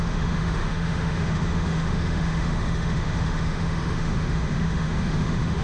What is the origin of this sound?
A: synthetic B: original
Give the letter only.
A